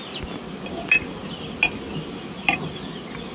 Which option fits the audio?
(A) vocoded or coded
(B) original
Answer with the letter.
B